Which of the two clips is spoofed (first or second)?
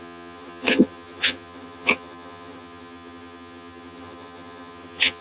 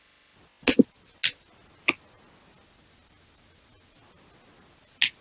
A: first